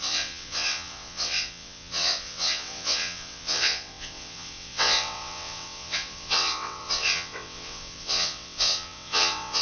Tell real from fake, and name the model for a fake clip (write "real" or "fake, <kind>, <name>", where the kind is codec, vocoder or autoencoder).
fake, vocoder, WaveNeXt